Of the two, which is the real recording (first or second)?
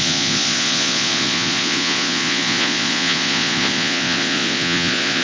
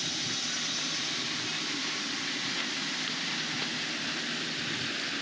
second